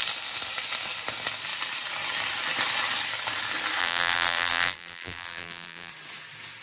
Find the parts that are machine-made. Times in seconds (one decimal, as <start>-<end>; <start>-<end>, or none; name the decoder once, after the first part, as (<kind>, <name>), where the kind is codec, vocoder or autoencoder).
3.8-5.9 (vocoder, BigVGAN v2)